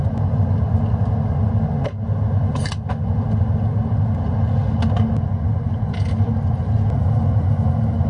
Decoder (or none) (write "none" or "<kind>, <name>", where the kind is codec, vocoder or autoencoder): none